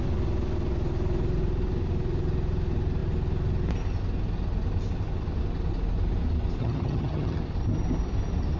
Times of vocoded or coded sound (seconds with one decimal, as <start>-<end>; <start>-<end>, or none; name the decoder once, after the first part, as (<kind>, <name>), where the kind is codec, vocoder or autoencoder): 6.6-7.4 (vocoder, HiFi-GAN)